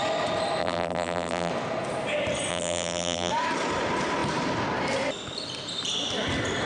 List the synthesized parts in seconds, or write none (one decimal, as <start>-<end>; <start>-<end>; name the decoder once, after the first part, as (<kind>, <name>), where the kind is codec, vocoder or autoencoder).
0.6-1.5 (vocoder, BigVGAN v2); 2.5-3.3